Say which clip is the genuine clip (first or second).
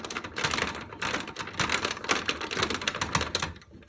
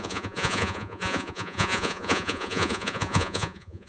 first